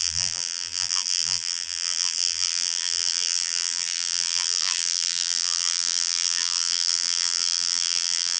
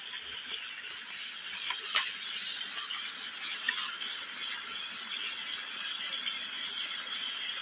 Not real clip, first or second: first